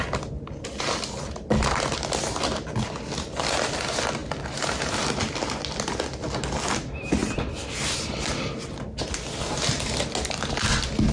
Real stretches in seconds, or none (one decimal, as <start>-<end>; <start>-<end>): 0.0-11.1